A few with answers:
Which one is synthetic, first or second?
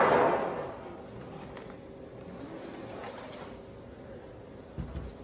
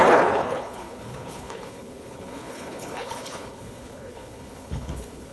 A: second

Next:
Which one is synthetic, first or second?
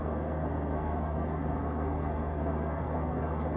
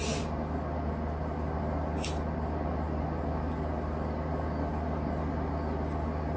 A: first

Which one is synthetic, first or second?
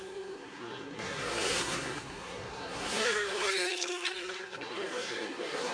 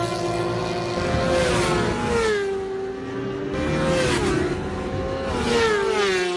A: first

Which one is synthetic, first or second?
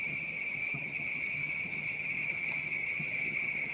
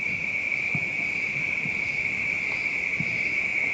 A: first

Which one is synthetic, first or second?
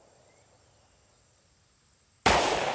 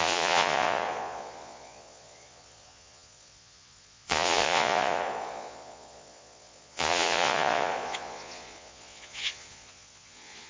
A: second